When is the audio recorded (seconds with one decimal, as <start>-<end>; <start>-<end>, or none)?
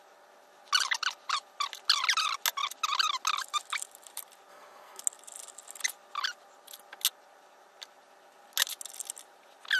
0.0-4.5; 5.0-9.8